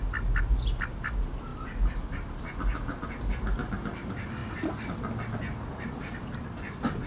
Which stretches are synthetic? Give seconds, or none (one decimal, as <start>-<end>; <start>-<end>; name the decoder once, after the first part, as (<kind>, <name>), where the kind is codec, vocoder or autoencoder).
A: none